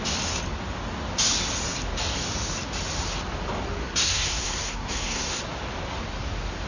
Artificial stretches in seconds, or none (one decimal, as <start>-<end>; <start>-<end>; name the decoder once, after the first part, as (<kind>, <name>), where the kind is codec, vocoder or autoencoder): 3.8-5.4 (codec, SNAC)